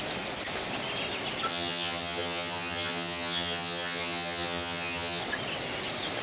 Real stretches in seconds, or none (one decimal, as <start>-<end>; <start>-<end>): 0.0-1.5; 5.2-6.2